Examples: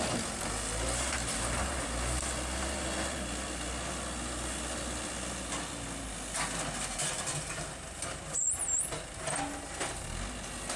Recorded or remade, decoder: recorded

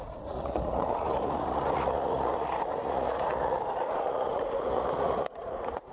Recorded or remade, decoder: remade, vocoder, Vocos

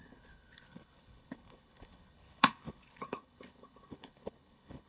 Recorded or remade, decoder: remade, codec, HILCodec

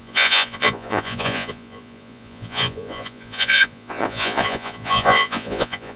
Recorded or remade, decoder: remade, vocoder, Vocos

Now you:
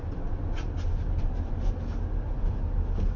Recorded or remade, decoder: recorded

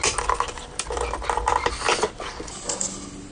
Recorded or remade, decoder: recorded